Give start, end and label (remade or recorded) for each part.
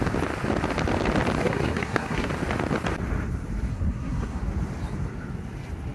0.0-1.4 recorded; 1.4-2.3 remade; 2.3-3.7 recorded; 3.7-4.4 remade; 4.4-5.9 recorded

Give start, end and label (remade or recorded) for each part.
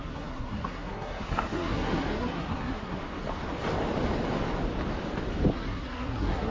0.0-3.0 remade; 3.0-5.5 recorded; 5.5-6.5 remade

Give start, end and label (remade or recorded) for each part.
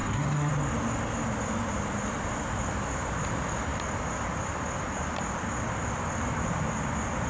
0.0-0.5 remade; 0.5-7.3 recorded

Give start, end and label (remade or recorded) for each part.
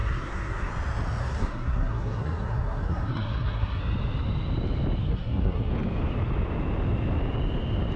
0.0-0.7 remade; 0.7-1.2 recorded; 1.2-3.8 remade; 3.8-5.0 recorded; 5.0-5.7 remade; 5.7-8.0 recorded